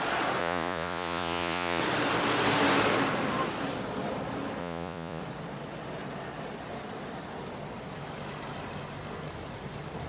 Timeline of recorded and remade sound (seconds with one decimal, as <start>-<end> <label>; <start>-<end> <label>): 0.0-0.4 recorded; 0.4-1.8 remade; 1.8-4.6 recorded; 4.6-5.2 remade; 5.2-10.1 recorded